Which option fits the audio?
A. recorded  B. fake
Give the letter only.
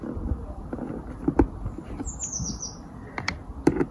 A